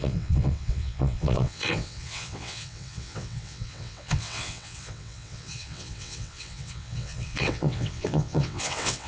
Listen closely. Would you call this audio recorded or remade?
remade